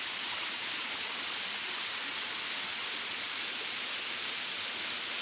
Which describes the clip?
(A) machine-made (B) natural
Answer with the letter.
B